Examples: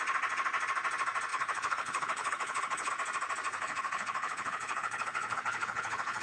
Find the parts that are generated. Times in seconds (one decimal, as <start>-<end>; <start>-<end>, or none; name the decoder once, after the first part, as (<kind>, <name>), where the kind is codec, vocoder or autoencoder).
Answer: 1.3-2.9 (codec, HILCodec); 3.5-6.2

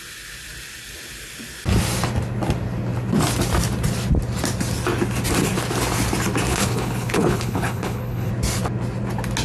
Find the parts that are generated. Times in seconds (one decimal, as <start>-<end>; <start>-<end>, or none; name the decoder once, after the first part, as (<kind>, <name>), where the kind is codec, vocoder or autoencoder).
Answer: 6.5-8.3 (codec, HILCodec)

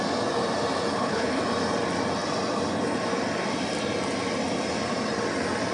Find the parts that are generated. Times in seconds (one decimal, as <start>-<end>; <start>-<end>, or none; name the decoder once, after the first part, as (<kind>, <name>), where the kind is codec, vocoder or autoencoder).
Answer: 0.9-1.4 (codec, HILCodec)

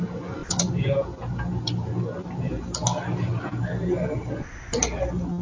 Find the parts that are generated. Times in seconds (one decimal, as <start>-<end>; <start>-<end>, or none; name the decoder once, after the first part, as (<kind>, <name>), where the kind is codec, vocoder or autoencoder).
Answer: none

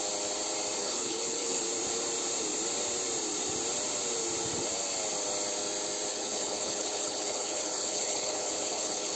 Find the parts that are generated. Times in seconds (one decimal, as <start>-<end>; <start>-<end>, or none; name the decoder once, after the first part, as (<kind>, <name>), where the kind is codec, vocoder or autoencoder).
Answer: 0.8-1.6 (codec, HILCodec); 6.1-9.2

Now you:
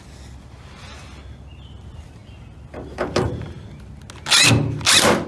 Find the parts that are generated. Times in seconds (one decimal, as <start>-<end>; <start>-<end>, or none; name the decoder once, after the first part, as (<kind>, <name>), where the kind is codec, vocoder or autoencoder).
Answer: none

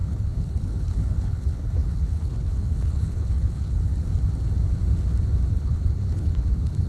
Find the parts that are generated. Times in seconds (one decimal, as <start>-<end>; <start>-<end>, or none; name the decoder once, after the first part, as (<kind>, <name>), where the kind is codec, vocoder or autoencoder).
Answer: 0.0-3.9 (codec, HILCodec); 5.5-6.9